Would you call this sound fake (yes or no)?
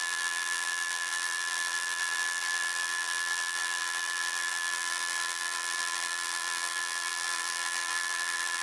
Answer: yes